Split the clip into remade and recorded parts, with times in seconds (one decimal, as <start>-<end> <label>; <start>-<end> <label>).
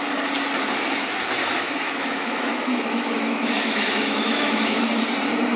0.0-1.4 recorded; 1.4-4.8 remade; 4.8-5.6 recorded